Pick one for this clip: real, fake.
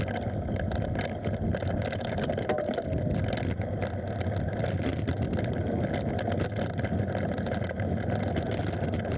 real